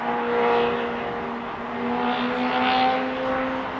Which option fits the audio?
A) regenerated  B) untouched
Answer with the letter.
B